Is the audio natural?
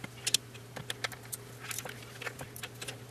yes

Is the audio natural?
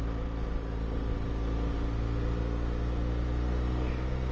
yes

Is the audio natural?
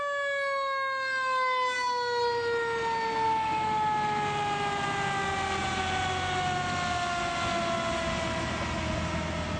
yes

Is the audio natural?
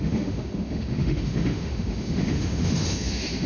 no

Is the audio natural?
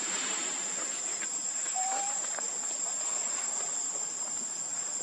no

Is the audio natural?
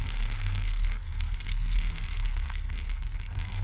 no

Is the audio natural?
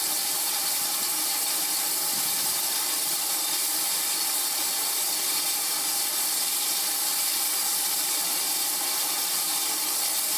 yes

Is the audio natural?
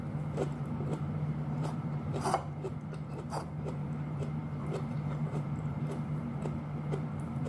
no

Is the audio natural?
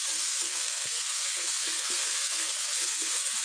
no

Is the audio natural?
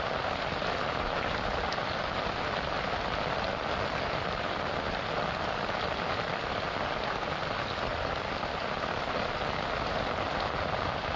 yes